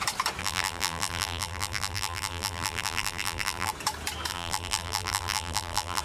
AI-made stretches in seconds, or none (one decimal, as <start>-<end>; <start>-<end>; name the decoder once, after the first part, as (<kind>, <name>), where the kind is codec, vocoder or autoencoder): 0.4-3.7 (vocoder, BigVGAN v2); 4.3-6.0